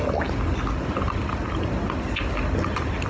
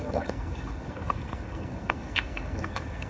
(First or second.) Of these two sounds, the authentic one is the first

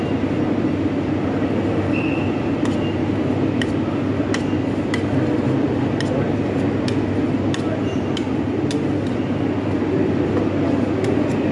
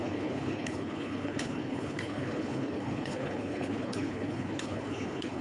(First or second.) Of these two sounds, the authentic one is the first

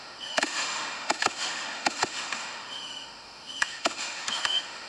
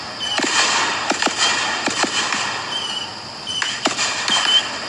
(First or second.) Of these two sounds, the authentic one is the second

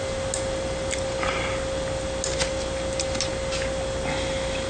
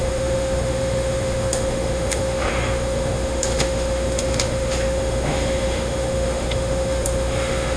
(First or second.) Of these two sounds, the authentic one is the first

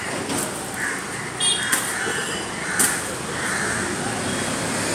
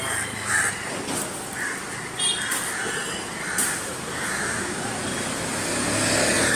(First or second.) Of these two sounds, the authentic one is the first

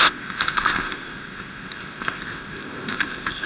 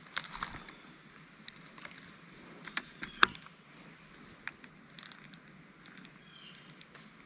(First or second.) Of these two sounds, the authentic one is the second